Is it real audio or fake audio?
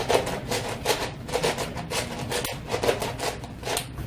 real